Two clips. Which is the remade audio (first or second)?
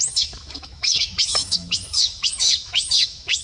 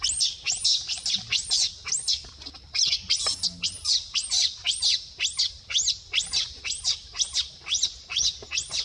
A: first